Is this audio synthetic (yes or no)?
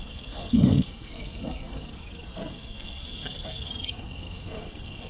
yes